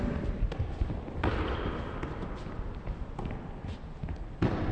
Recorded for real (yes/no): no